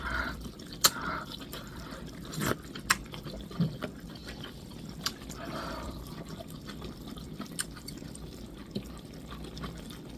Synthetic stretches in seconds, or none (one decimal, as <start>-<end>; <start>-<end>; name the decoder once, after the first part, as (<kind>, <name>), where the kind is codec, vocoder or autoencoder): 0.0-8.6 (vocoder, BigVGAN v2); 9.5-10.2